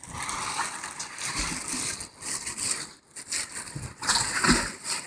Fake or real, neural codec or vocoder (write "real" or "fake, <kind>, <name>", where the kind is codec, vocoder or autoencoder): real